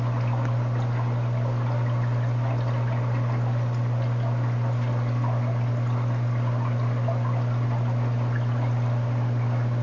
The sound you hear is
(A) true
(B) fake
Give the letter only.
A